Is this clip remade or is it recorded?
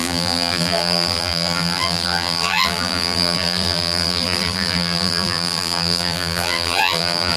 remade